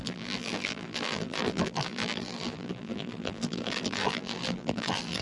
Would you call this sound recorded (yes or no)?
no